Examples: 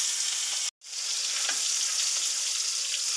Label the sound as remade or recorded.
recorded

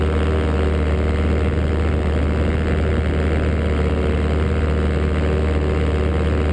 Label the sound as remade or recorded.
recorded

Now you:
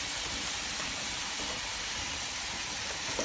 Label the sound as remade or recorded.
remade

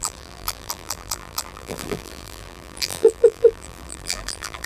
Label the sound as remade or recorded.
remade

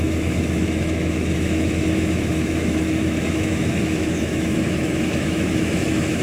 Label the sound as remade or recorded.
remade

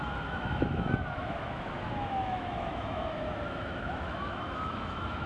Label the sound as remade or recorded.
remade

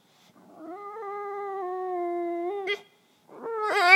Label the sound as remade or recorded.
recorded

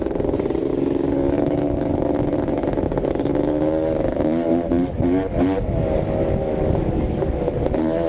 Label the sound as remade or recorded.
remade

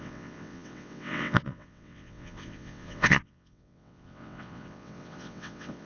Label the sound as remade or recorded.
remade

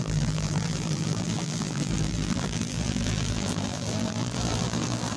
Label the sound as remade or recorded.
remade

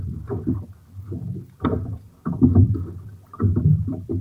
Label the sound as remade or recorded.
remade